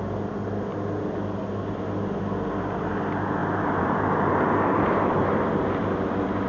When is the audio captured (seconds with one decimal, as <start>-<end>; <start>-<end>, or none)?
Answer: 0.0-3.4; 5.2-6.5